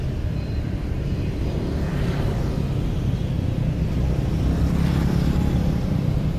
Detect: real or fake real